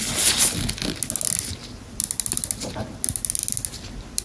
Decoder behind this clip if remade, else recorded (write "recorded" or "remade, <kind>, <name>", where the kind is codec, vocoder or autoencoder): recorded